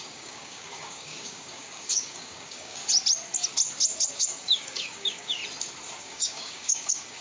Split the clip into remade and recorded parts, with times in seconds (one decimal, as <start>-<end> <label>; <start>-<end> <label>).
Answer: 0.0-2.8 remade; 2.8-4.1 recorded; 4.1-5.4 remade; 5.4-6.0 recorded; 6.0-7.2 remade